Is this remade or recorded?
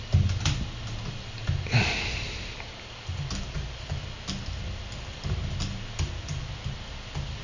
recorded